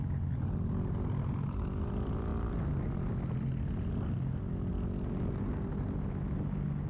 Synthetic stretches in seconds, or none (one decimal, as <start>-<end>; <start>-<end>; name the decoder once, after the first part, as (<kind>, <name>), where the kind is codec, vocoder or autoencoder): none

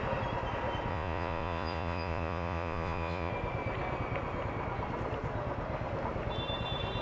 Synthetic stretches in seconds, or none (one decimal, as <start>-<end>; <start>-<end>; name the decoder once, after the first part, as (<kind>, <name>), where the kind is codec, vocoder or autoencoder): 0.9-3.3 (vocoder, Vocos)

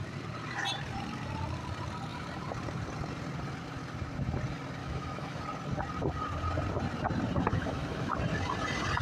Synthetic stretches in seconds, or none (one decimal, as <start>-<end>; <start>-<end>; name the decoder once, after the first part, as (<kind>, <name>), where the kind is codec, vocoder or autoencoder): 4.8-5.4 (autoencoder, DAC-VAE); 7.5-8.1

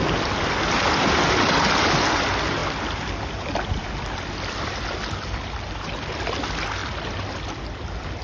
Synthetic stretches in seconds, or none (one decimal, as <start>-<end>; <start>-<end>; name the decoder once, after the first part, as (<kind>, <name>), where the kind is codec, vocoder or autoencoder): none

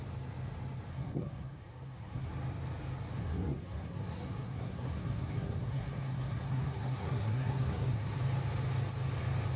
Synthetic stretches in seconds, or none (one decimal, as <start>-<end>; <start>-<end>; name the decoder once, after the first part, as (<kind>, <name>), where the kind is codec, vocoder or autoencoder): 0.9-2.3 (codec, SNAC); 3.2-8.2